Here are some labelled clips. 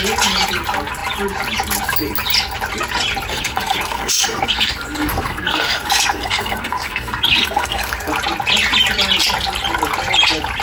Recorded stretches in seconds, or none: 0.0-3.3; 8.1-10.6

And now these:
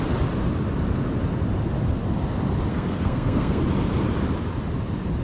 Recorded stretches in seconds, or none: 0.0-2.7; 3.6-5.2

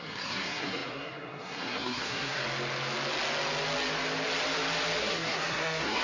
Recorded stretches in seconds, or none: 2.4-5.0

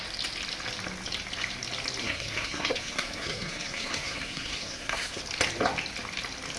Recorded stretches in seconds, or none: 0.0-2.0; 5.2-6.6

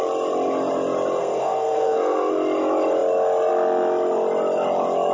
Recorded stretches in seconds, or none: 0.0-1.2; 2.3-5.1

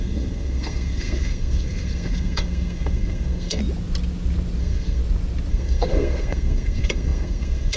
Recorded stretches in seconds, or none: 3.6-4.6; 5.0-5.5